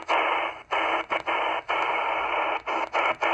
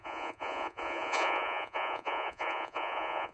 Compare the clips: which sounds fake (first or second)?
second